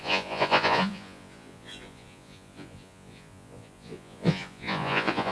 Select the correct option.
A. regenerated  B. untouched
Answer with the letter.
A